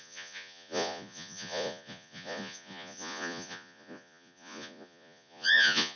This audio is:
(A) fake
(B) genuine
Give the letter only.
A